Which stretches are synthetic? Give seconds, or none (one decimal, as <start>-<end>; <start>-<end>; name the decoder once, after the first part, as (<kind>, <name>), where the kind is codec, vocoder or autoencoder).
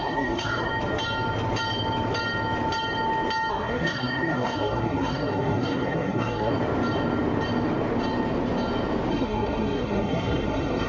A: 0.0-0.7 (codec, SNAC); 3.5-6.5; 9.1-10.9